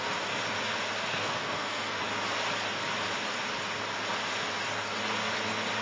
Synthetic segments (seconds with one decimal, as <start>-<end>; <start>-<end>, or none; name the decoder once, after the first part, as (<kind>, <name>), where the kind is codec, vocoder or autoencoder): 1.1-2.0 (codec, SNAC)